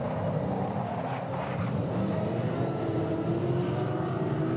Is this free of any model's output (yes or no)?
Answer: yes